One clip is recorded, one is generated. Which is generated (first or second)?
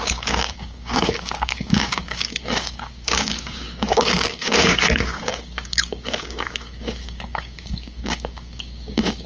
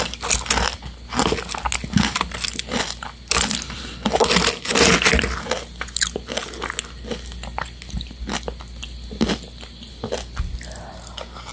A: first